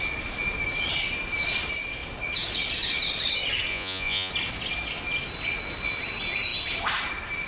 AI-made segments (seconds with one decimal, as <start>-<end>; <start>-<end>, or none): 3.7-4.3